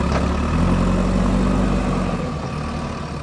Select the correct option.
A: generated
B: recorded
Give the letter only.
B